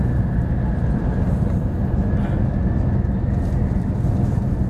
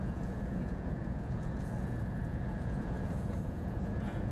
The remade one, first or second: second